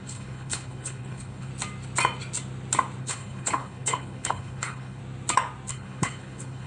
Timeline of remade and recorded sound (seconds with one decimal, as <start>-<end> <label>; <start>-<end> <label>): 0.0-1.5 remade; 1.5-3.0 recorded; 3.0-5.0 remade; 5.0-5.7 recorded; 5.7-6.7 remade